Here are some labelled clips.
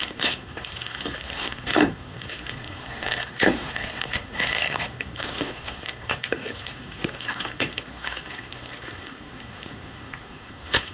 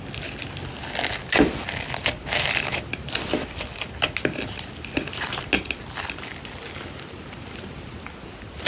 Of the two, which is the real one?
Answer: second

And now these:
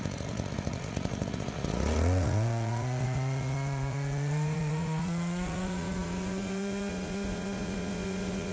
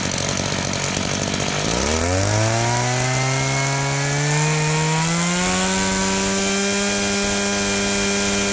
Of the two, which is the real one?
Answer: second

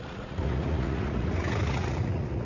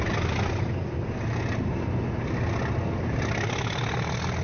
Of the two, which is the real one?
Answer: second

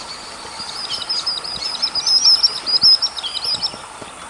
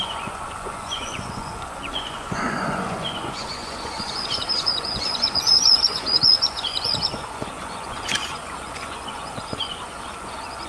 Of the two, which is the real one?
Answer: first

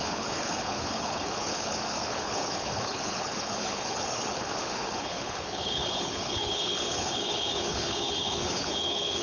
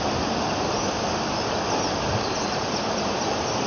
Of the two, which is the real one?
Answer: second